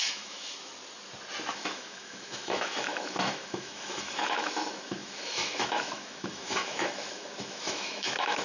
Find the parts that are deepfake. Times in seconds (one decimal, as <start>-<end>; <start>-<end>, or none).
0.0-0.7; 1.5-8.4